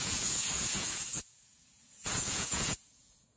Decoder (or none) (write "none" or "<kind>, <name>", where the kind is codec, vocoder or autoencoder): vocoder, Vocos